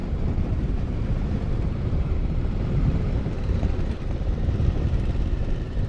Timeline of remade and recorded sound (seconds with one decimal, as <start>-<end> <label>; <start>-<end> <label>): 0.0-5.9 remade